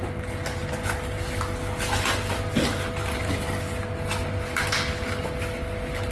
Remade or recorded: recorded